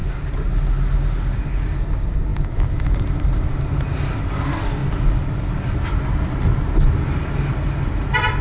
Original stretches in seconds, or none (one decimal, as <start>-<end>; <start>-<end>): 0.0-8.4